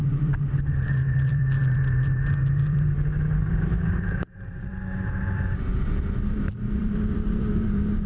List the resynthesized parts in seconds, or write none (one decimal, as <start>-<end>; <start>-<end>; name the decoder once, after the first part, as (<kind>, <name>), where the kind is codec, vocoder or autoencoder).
0.0-4.7 (vocoder, BigVGAN v2); 6.3-8.1